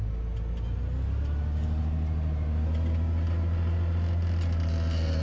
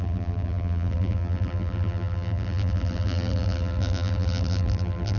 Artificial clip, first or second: second